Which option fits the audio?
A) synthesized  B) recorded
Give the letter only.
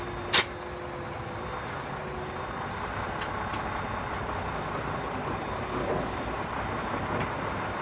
B